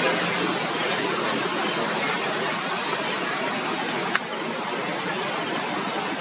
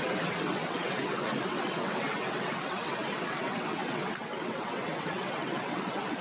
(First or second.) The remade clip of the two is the second